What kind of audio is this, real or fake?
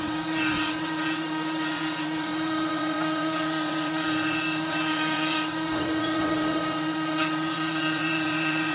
fake